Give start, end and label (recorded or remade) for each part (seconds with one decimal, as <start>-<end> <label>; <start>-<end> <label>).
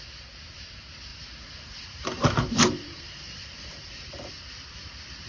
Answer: 0.0-1.1 recorded; 1.1-4.3 remade; 4.3-5.3 recorded